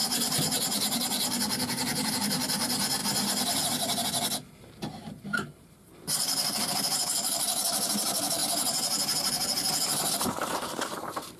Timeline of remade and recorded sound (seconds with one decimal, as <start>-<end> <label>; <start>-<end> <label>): 0.0-3.0 remade; 3.0-4.6 recorded; 4.6-8.4 remade; 8.4-10.1 recorded; 10.1-11.4 remade